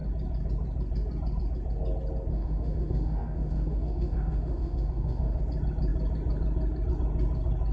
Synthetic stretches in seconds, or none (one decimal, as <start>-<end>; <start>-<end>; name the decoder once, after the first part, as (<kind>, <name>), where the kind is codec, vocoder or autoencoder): 2.3-5.4 (autoencoder, DAC-VAE)